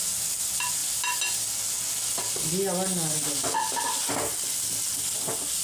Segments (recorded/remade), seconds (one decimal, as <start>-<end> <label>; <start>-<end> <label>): 0.0-5.6 recorded